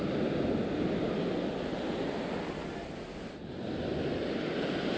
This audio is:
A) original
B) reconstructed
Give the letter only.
A